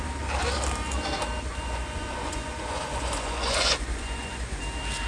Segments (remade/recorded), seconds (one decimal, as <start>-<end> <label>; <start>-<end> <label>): 0.0-1.5 recorded; 1.5-4.6 remade; 4.6-5.1 recorded